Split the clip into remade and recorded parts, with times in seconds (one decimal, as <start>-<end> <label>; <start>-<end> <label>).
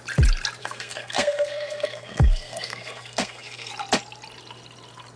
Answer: 0.0-0.6 recorded; 0.6-3.7 remade; 3.7-5.2 recorded